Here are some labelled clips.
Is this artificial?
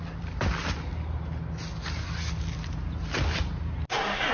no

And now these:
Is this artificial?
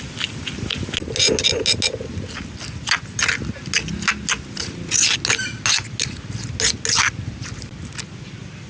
no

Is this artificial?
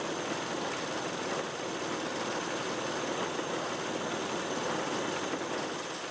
no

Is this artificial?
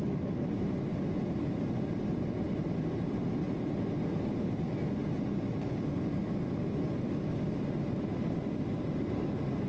no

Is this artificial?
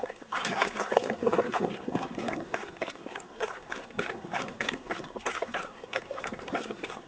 yes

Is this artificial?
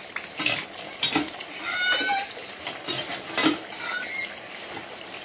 no